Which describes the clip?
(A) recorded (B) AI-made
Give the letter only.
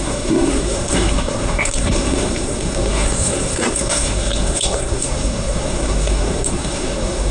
B